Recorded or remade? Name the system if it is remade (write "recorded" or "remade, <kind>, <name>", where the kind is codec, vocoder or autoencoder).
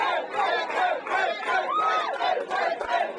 recorded